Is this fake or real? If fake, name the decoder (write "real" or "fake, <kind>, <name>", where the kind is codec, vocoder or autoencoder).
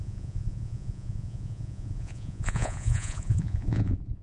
fake, vocoder, Vocos